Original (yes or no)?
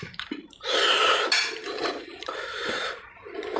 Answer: no